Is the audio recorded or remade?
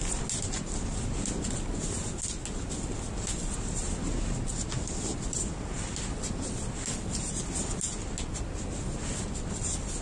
recorded